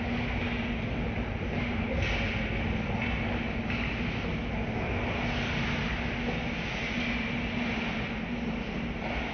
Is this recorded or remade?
recorded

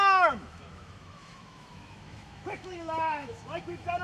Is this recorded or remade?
remade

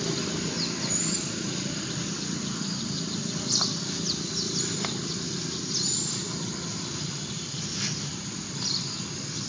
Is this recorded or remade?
remade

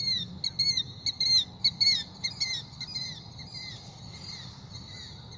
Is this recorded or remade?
recorded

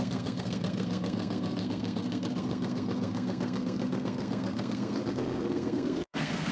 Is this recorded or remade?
remade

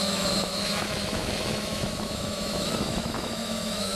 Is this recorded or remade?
remade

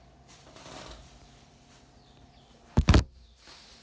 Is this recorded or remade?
remade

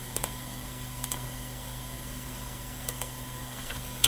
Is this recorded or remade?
remade